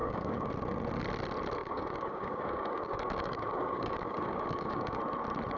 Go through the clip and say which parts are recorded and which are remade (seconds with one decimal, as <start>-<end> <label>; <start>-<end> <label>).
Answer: 0.0-0.5 remade; 0.5-1.6 recorded; 1.6-5.0 remade; 5.0-5.6 recorded